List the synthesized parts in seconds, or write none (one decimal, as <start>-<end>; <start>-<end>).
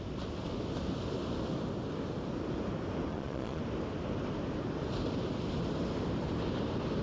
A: 3.1-3.6